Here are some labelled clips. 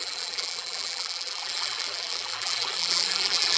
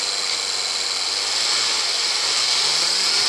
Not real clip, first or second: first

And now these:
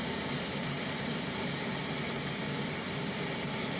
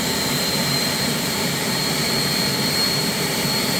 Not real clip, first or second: second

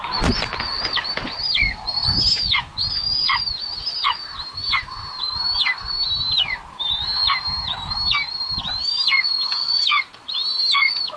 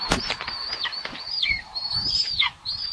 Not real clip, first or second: second